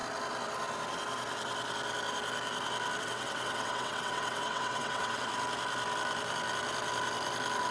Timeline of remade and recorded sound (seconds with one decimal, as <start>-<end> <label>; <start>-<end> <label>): 0.0-3.0 recorded; 3.0-5.3 remade; 5.3-7.7 recorded

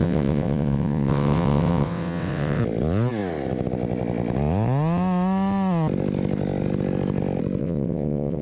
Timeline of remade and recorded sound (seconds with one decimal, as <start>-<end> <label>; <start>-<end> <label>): 0.0-2.6 remade; 2.6-7.6 recorded; 7.6-8.4 remade